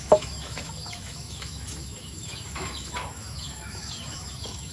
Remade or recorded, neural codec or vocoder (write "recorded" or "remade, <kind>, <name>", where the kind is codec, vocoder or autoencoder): remade, autoencoder, DAC-VAE